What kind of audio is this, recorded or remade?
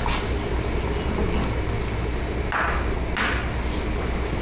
recorded